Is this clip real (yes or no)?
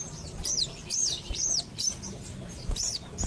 no